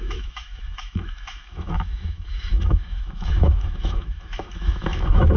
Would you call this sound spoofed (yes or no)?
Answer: yes